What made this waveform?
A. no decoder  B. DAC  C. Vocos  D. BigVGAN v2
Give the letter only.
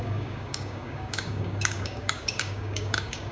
B